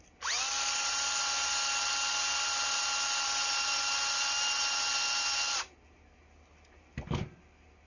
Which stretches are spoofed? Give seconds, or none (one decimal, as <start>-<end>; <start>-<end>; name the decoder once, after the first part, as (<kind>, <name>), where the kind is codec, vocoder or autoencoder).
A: none